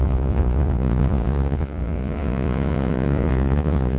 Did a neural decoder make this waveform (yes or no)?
yes